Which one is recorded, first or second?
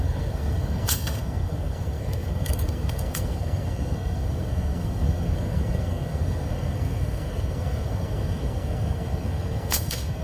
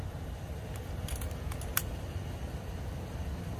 second